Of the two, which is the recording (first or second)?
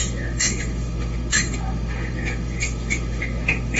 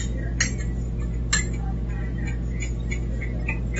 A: second